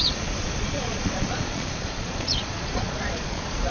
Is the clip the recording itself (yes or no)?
no